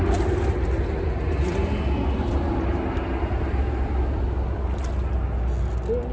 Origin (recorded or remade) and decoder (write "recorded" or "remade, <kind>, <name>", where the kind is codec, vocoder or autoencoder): recorded